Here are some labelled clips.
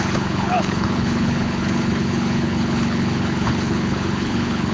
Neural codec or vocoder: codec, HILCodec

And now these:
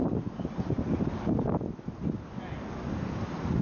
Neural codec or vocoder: none